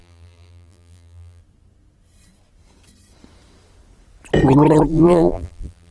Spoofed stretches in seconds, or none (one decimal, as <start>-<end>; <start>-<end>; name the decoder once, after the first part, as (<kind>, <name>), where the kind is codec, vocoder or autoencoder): 0.0-1.4 (vocoder, BigVGAN v2); 4.9-5.9